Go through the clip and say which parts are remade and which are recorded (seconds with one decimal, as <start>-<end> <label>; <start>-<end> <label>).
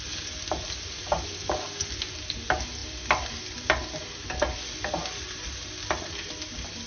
0.0-6.9 recorded